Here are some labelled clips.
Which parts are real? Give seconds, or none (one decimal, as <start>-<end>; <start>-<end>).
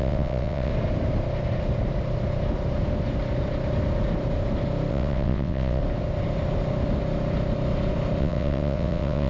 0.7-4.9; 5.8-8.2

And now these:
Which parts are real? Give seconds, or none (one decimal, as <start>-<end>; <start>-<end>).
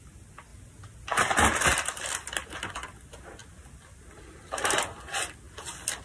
0.0-6.0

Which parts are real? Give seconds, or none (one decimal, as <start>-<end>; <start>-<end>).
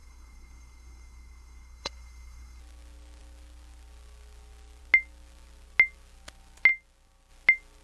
2.6-7.8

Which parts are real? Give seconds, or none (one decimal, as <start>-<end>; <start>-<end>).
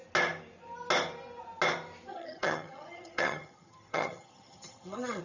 0.0-2.1